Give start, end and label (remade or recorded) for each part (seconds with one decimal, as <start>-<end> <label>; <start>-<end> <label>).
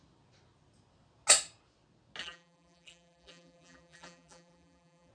0.0-2.2 recorded; 2.2-5.1 remade